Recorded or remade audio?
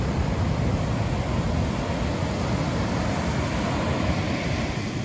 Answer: recorded